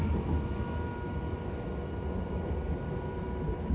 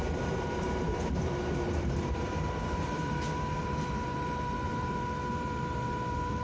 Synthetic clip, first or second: second